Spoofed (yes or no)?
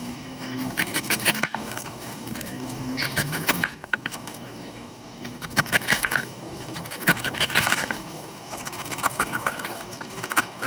yes